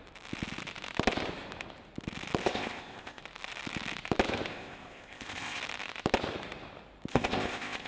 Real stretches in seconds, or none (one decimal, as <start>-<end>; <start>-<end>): 0.0-2.4; 3.2-4.5; 5.6-7.1